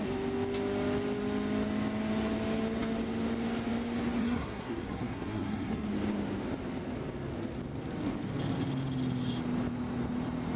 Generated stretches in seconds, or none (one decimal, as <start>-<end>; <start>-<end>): 4.2-5.9